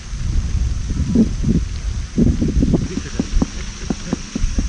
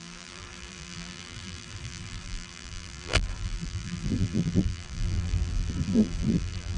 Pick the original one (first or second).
first